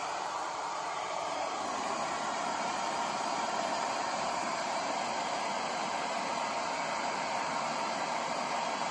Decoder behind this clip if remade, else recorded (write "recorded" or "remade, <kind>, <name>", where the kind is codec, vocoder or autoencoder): remade, vocoder, BigVGAN v2